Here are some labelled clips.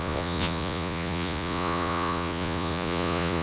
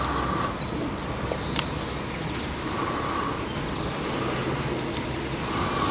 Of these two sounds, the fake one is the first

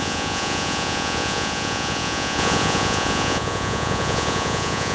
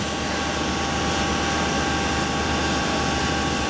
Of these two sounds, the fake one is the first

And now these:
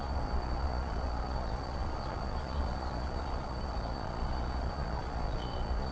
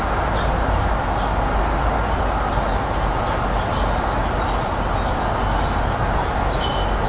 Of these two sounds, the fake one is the first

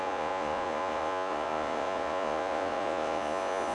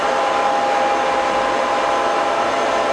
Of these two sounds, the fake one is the first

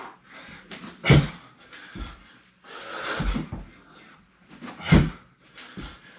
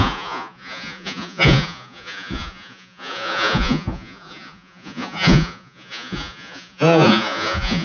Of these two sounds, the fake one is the second